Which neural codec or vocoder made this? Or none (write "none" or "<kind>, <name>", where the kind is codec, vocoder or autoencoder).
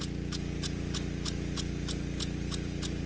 none